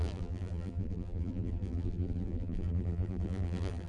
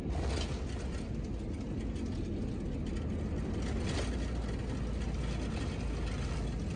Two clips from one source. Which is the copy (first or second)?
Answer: first